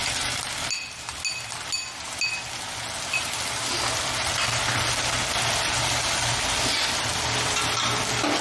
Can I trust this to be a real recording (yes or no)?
yes